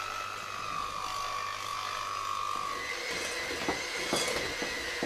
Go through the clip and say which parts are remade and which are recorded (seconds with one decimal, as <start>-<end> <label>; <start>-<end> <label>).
0.0-5.1 recorded